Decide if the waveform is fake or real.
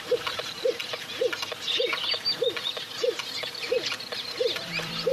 fake